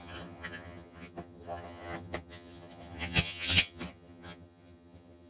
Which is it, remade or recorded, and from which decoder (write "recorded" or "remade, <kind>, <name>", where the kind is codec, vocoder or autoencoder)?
remade, vocoder, HiFi-GAN